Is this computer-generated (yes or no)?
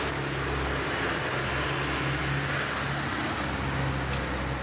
no